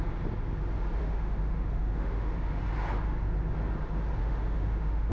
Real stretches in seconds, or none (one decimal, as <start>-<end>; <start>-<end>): 0.0-1.0; 2.6-4.2